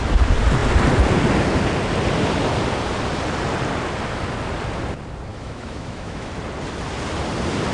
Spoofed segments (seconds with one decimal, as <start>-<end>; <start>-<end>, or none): 5.3-6.3